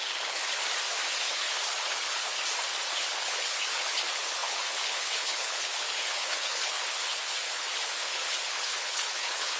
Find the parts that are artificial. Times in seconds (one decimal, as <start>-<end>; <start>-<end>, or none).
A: 0.0-0.6; 1.2-2.4; 2.9-9.6